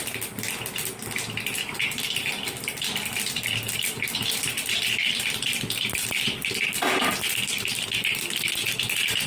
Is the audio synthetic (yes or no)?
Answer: no